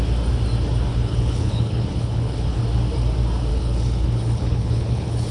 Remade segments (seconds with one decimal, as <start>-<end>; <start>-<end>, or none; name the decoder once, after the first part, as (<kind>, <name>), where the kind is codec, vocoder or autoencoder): 0.9-2.6 (codec, HILCodec); 3.5-5.3